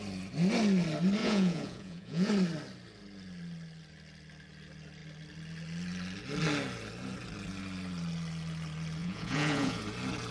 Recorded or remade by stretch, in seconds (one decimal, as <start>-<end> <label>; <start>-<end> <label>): 0.0-1.2 recorded; 1.2-2.3 remade; 2.3-9.0 recorded; 9.0-9.8 remade; 9.8-10.3 recorded